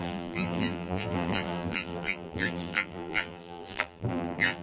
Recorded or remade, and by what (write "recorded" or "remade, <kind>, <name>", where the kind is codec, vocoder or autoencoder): remade, vocoder, BigVGAN v2